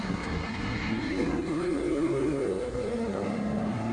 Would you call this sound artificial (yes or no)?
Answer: yes